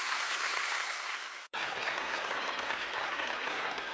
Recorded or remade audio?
remade